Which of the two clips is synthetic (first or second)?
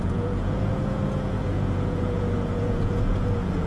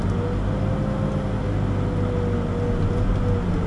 first